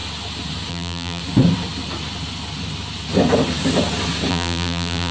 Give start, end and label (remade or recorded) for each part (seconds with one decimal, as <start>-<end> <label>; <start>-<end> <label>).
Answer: 0.0-0.7 recorded; 0.7-1.2 remade; 1.2-4.3 recorded; 4.3-5.1 remade